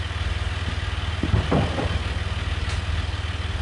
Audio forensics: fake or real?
real